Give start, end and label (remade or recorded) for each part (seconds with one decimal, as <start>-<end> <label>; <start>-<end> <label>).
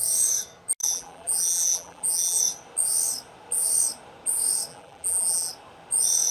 0.0-0.8 recorded; 0.8-2.4 remade; 2.4-4.7 recorded; 4.7-5.5 remade; 5.5-6.3 recorded